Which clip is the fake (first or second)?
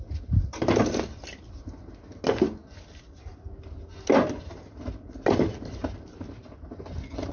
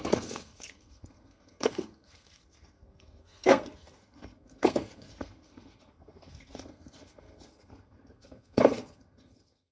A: second